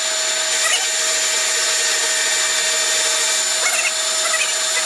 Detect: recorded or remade recorded